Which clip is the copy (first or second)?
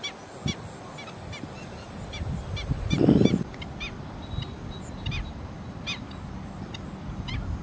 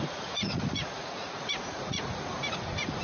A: second